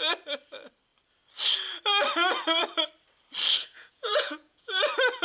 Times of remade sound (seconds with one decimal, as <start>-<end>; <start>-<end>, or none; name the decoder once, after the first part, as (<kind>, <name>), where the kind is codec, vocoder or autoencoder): 3.6-4.8 (vocoder, Vocos)